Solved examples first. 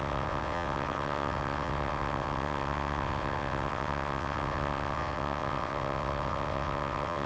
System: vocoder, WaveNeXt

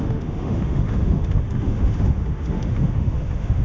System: autoencoder, DAC-VAE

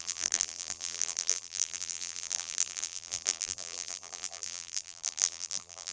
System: vocoder, BigVGAN v2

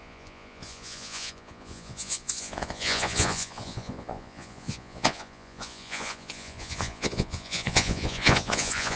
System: vocoder, Vocos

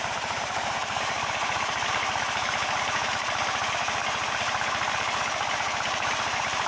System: vocoder, BigVGAN v2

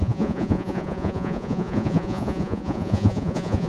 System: vocoder, Vocos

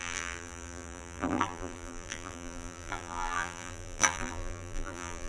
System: vocoder, BigVGAN v2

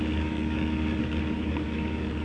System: codec, DAC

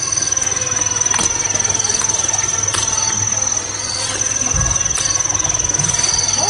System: none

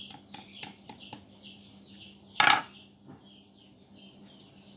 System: none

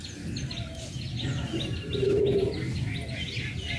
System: none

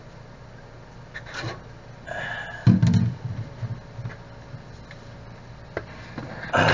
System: none